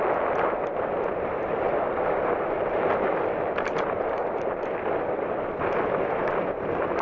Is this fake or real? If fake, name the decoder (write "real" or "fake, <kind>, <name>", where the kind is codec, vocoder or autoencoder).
real